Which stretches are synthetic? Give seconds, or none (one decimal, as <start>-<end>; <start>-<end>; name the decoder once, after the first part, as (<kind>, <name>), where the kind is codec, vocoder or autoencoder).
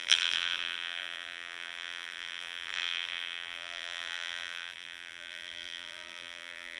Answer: 0.0-6.8 (vocoder, BigVGAN v2)